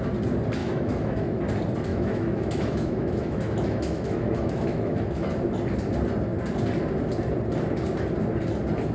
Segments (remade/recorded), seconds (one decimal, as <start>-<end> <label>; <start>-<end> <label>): 0.0-0.6 recorded; 0.6-1.4 remade; 1.4-1.9 recorded; 1.9-5.3 remade; 5.3-8.9 recorded